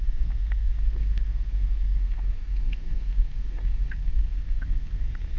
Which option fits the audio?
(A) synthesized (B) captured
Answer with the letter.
A